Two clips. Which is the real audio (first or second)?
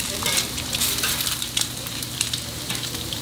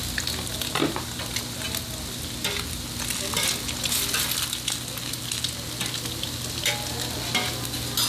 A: second